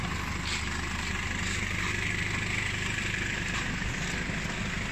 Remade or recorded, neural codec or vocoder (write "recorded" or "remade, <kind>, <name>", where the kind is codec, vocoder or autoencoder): recorded